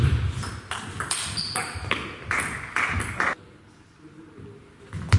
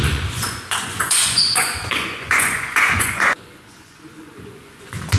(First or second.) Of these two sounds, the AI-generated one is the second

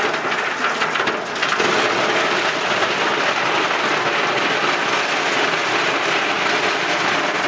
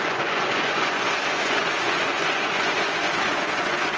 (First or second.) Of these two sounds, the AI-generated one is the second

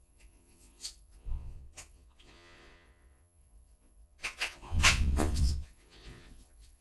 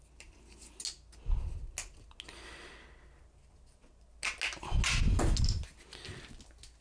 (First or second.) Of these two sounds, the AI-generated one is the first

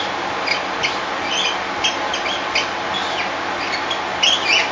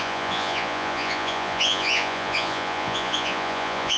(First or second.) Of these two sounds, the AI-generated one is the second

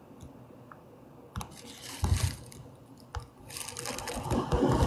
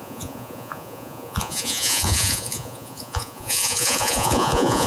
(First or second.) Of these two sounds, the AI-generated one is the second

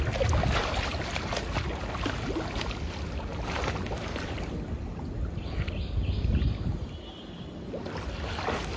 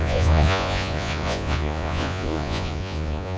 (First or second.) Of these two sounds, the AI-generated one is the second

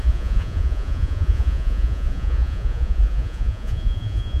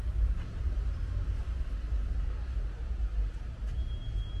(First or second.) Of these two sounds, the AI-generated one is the first